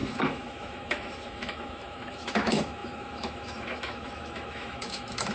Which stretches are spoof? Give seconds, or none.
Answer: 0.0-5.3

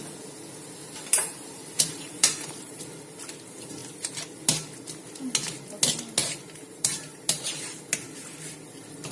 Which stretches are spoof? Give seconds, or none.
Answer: 0.8-2.8; 6.2-7.6

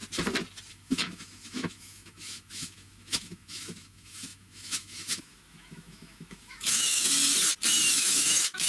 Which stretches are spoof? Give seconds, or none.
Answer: 0.7-7.1; 8.0-8.7

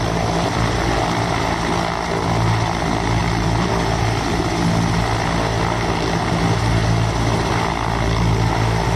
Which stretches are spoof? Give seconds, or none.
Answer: 3.2-3.7

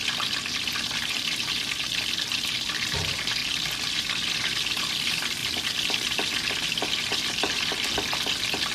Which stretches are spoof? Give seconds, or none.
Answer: 1.0-3.4; 5.0-5.4; 7.9-8.7

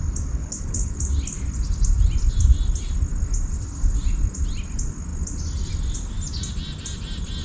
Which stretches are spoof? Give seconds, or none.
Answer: 0.4-1.0

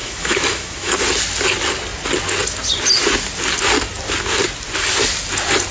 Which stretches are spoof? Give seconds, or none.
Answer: 0.0-0.9